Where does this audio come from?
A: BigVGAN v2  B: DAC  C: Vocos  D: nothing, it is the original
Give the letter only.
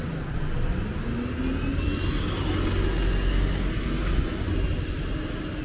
D